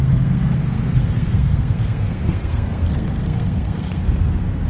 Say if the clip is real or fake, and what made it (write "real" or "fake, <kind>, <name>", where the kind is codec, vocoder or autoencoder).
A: fake, codec, SNAC